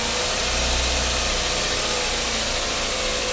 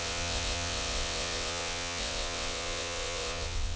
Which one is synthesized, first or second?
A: second